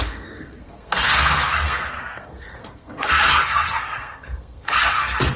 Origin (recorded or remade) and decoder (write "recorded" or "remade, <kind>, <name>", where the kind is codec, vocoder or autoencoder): remade, codec, SNAC